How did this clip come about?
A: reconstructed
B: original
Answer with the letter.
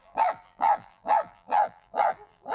A